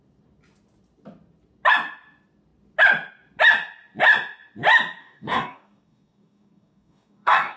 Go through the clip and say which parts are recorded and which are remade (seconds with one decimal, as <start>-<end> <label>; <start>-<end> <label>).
0.0-5.0 recorded; 5.0-7.6 remade